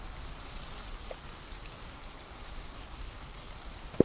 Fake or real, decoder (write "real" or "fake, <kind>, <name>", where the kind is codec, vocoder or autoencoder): fake, vocoder, BigVGAN v2